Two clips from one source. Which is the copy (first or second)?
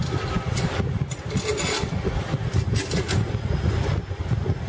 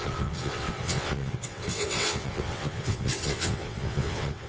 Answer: second